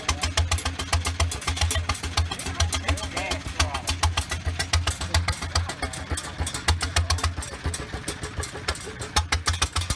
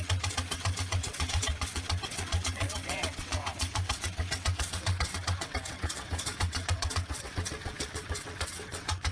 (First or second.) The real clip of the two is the first